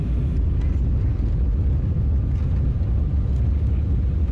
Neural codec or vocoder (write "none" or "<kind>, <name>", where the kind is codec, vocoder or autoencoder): none